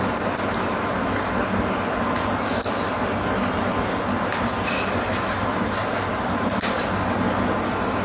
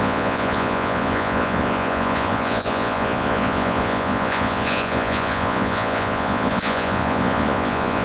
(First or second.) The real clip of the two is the first